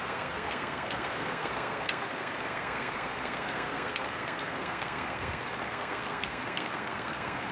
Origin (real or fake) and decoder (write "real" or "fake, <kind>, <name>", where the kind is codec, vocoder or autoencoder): fake, codec, SNAC